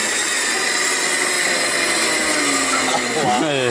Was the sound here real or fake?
real